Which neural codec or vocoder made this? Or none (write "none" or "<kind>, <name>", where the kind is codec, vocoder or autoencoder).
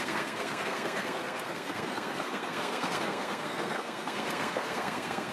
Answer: codec, SNAC